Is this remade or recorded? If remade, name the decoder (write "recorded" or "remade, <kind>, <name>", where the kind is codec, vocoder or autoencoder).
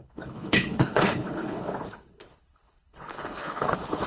remade, codec, HILCodec